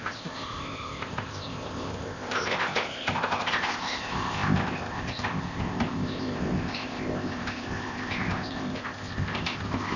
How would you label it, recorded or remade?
remade